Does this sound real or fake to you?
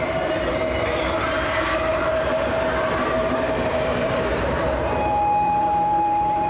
fake